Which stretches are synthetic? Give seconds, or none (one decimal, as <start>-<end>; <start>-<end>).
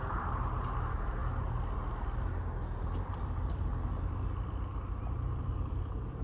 0.0-1.2; 3.1-6.2